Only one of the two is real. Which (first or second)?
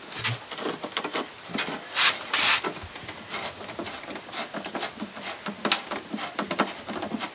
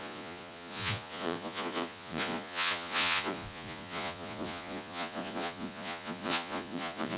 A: first